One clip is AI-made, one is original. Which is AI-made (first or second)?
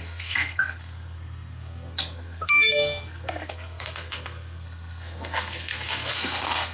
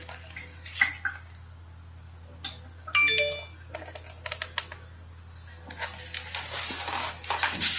first